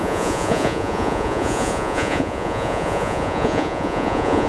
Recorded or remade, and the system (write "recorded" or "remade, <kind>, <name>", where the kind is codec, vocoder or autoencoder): remade, vocoder, Vocos